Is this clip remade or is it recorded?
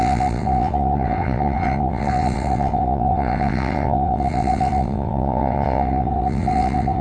remade